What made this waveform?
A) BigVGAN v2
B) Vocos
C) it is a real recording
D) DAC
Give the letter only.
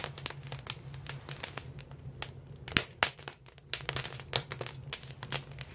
C